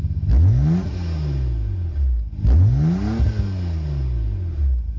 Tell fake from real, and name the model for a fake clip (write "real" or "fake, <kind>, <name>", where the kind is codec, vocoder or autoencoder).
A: real